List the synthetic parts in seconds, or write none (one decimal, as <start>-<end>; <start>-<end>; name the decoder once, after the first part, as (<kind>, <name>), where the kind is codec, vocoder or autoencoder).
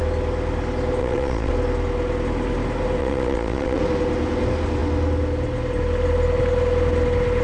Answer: 1.0-1.5 (vocoder, Vocos); 3.0-3.8